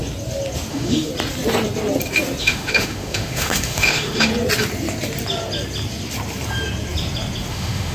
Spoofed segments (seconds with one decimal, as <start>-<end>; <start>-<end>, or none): 0.7-1.1; 2.4-4.3; 7.5-7.9